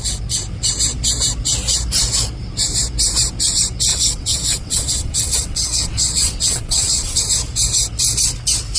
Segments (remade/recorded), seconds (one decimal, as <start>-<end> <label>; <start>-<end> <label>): 0.0-3.9 recorded; 3.9-7.2 remade; 7.2-8.8 recorded